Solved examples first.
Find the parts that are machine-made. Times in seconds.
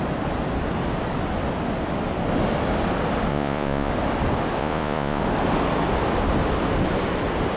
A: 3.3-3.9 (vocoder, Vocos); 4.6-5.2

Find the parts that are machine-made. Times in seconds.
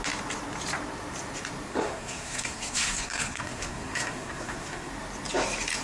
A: 1.7-4.9 (codec, SNAC)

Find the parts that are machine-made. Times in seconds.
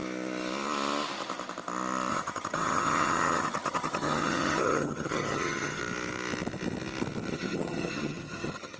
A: 2.1-5.8 (vocoder, HiFi-GAN); 7.3-8.8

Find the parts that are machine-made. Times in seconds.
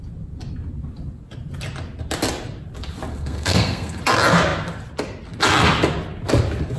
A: 3.1-4.0 (codec, SNAC)